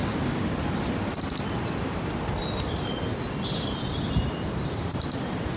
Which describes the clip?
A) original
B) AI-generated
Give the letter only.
A